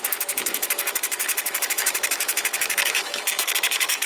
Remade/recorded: remade